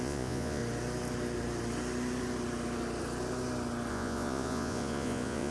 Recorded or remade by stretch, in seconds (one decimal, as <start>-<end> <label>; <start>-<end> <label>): 0.0-0.6 remade; 0.6-3.9 recorded; 3.9-5.5 remade